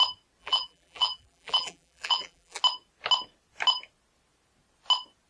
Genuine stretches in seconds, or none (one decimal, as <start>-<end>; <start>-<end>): 0.0-0.4; 2.6-5.3